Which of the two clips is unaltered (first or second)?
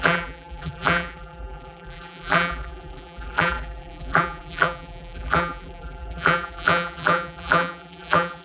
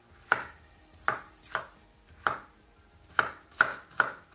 second